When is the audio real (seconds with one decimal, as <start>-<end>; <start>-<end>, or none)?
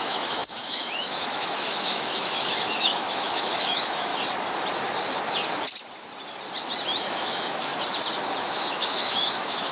4.1-7.0; 7.7-8.4